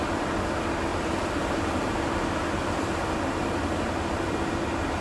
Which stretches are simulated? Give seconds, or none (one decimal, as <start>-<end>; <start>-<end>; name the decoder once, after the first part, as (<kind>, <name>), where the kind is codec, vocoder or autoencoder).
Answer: 0.9-3.9 (vocoder, BigVGAN v2)